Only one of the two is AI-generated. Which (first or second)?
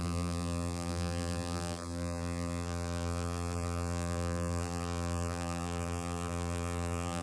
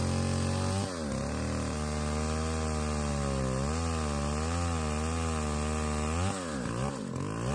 first